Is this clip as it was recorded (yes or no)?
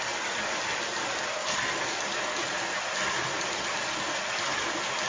yes